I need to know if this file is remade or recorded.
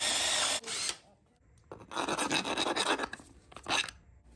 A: recorded